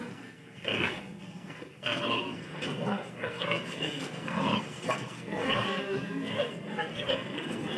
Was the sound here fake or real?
fake